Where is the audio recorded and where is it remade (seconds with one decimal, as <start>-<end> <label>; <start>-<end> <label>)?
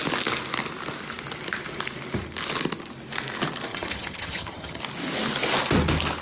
0.0-3.7 recorded; 3.7-4.8 remade; 4.8-6.2 recorded